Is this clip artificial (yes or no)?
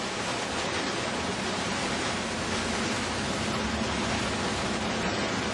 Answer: no